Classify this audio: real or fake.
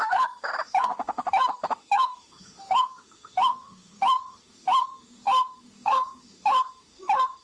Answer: fake